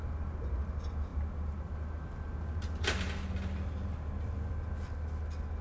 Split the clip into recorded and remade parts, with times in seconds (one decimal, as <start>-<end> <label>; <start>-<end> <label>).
0.0-5.6 recorded